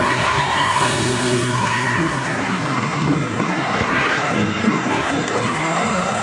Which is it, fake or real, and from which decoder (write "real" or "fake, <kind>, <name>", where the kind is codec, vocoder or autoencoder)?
fake, codec, SNAC